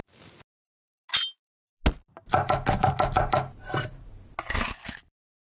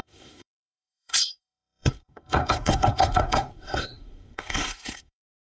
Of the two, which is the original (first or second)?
first